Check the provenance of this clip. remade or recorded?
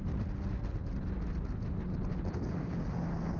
recorded